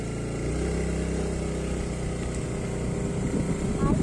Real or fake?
real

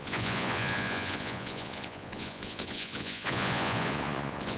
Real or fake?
fake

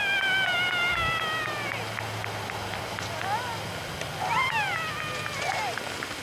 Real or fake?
real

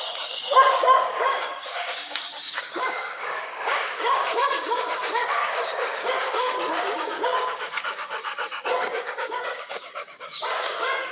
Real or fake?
fake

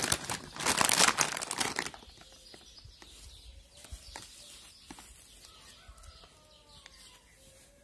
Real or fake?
real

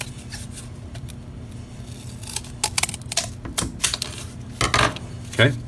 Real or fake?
real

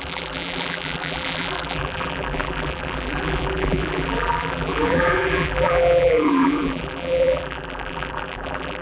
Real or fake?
fake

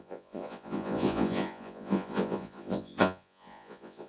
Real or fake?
fake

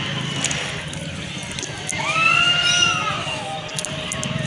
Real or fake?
real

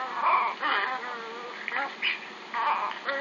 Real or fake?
real